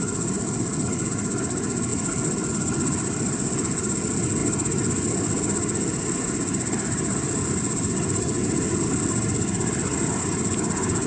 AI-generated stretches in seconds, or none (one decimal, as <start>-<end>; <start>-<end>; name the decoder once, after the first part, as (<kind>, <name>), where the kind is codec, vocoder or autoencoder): none